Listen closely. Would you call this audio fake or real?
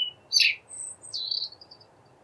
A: real